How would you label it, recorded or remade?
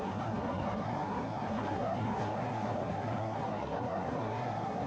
remade